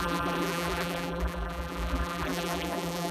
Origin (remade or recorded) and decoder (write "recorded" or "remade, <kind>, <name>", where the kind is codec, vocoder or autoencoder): remade, vocoder, BigVGAN v2